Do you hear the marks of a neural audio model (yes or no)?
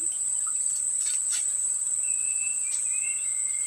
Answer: no